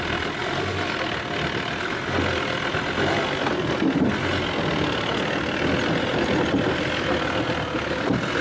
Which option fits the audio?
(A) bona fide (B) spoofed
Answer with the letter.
A